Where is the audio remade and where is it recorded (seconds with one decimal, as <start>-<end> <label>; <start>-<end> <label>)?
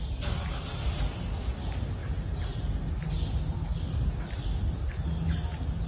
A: 0.0-5.9 recorded